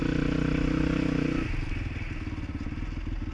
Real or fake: real